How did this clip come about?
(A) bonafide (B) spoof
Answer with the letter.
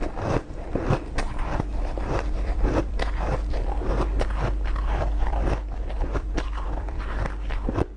B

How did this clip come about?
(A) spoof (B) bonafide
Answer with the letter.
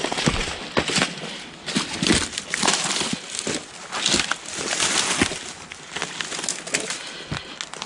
B